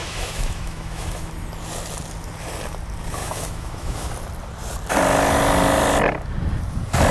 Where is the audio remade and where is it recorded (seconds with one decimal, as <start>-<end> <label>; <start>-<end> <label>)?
0.0-1.3 remade; 1.3-3.2 recorded; 3.2-4.1 remade; 4.1-7.1 recorded